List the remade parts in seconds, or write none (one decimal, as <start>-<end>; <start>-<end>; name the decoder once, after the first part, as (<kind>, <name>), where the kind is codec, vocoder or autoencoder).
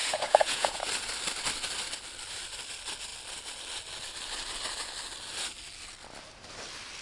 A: 0.0-0.8 (vocoder, Vocos)